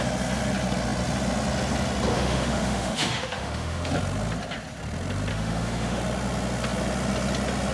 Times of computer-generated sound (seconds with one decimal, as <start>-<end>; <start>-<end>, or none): 2.1-3.9; 5.3-6.0